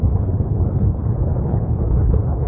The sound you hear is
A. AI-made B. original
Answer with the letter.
A